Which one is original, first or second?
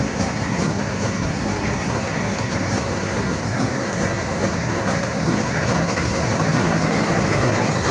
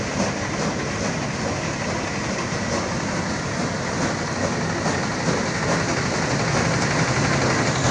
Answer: second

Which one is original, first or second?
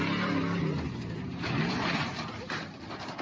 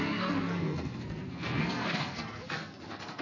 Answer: first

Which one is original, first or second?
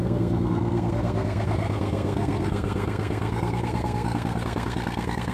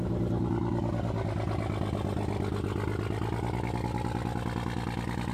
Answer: second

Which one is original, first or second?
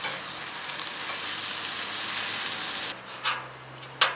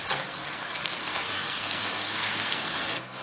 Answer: first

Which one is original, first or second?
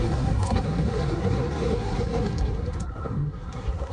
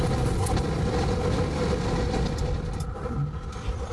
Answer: second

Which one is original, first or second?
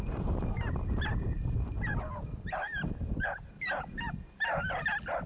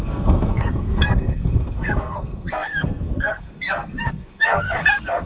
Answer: first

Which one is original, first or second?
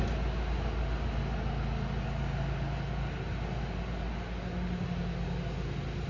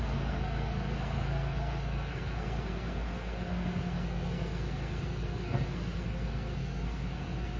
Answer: first